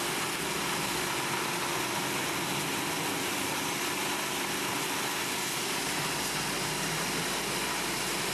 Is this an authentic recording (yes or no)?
yes